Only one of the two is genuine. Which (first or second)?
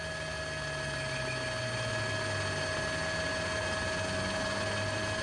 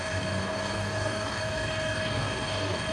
first